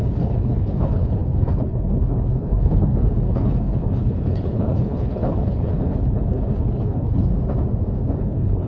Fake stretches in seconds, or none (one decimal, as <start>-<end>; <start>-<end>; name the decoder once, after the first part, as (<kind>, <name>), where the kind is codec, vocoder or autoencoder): 0.0-7.3 (codec, HILCodec); 8.2-8.7